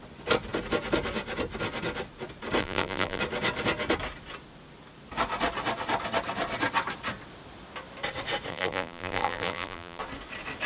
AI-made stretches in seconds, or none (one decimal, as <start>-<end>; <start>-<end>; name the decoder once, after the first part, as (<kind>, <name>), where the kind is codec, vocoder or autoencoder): 2.6-3.2 (vocoder, BigVGAN v2); 8.5-10.0